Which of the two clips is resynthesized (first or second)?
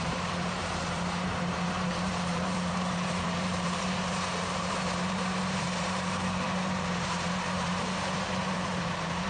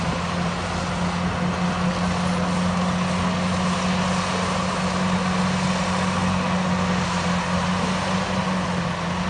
first